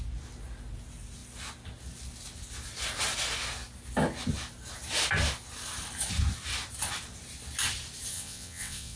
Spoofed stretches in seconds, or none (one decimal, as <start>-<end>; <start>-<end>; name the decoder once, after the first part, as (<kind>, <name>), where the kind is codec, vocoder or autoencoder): 8.1-9.0 (vocoder, WaveNeXt)